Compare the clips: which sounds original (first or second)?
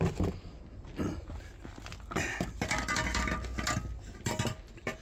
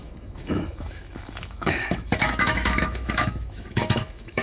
first